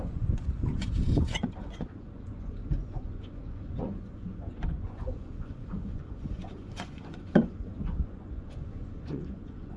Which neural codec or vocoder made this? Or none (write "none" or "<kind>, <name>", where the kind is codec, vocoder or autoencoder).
vocoder, Vocos